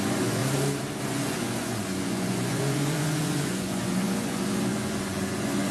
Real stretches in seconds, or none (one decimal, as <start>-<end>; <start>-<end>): 0.4-1.0